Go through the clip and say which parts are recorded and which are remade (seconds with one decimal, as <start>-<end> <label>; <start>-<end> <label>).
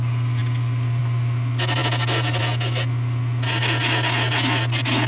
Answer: 0.0-5.1 recorded